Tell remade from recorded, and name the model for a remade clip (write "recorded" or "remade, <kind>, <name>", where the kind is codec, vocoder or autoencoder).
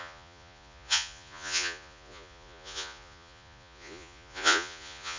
remade, vocoder, Vocos